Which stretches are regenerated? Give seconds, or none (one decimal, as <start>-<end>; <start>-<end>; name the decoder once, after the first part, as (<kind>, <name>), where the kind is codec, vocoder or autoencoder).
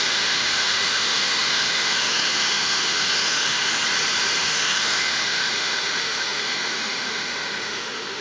0.0-3.8 (autoencoder, DAC-VAE); 4.4-8.2